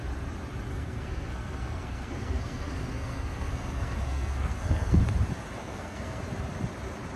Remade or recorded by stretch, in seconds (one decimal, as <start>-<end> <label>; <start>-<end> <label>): 0.0-0.7 recorded; 0.7-5.0 remade; 5.0-5.6 recorded; 5.6-6.2 remade; 6.2-7.2 recorded